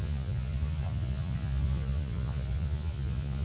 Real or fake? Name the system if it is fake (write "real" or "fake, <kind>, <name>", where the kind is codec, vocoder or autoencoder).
fake, vocoder, Vocos